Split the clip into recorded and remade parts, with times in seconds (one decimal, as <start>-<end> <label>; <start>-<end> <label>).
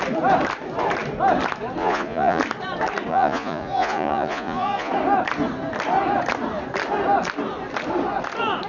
0.0-1.8 recorded; 1.8-2.4 remade; 2.4-3.1 recorded; 3.1-4.9 remade; 4.9-8.7 recorded